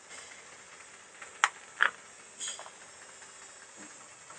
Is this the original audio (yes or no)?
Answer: yes